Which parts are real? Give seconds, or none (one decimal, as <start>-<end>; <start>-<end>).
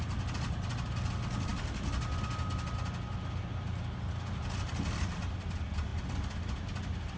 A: 0.0-7.2